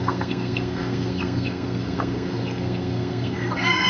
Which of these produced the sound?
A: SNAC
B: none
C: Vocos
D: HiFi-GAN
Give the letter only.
A